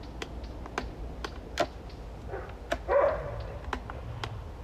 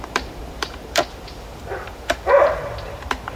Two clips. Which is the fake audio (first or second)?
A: second